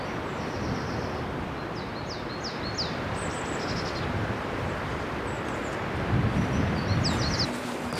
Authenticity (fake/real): real